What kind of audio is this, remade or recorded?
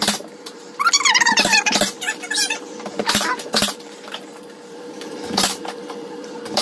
remade